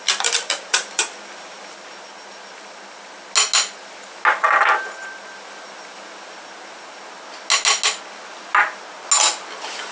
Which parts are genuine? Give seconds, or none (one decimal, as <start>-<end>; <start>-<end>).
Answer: 1.6-9.9